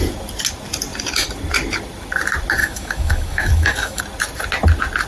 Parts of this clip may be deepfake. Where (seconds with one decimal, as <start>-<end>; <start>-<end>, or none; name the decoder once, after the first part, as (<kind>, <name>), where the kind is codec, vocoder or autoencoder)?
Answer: 2.6-4.0 (autoencoder, DAC-VAE)